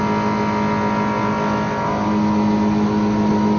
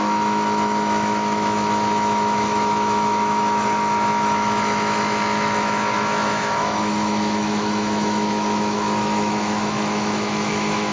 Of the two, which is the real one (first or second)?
first